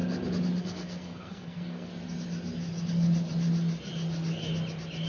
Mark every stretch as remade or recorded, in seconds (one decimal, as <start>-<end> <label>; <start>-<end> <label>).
0.0-0.6 recorded; 0.6-1.9 remade; 1.9-5.1 recorded